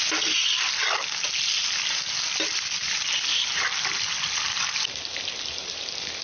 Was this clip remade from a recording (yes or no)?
no